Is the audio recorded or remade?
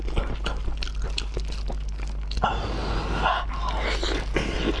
recorded